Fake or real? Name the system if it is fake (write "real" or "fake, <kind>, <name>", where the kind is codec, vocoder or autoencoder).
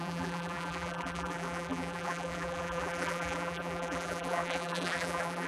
fake, vocoder, BigVGAN v2